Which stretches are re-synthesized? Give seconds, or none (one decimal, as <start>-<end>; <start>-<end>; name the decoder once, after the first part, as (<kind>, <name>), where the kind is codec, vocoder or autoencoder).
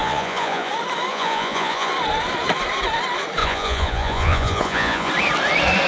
0.0-0.7 (vocoder, Vocos); 1.1-1.9; 3.4-5.1